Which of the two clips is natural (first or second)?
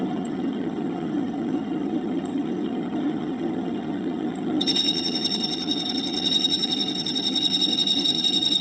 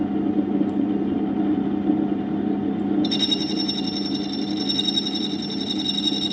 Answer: second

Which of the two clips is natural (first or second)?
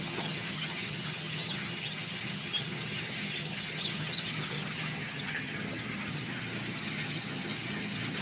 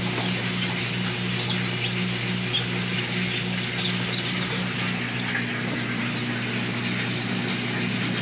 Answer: second